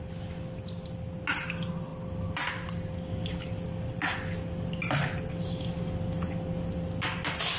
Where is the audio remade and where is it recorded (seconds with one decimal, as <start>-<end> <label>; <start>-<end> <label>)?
0.0-7.6 recorded